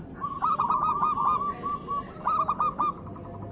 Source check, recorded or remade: recorded